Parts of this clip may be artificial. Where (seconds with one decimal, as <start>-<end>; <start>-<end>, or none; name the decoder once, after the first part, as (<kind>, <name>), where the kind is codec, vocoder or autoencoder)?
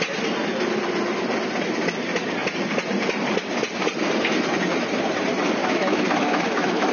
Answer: 5.6-6.9 (autoencoder, DAC-VAE)